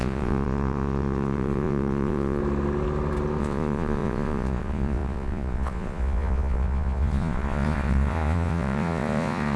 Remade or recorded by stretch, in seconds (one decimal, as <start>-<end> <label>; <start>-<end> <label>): 0.0-2.4 remade; 2.4-3.4 recorded; 3.4-9.6 remade